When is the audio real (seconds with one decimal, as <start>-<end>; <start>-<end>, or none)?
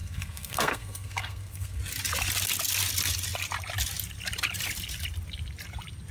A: 1.8-6.1